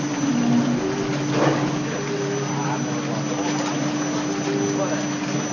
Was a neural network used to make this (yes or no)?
no